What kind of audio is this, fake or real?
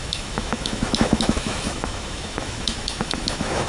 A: fake